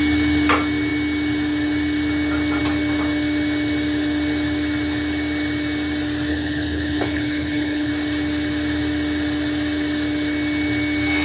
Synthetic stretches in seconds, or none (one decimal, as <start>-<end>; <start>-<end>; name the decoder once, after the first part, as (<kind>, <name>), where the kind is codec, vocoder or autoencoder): 6.3-7.9 (codec, HILCodec)